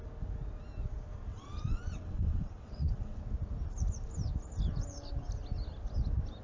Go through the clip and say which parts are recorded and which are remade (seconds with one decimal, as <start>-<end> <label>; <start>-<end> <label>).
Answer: 0.0-1.3 recorded; 1.3-3.2 remade; 3.2-6.4 recorded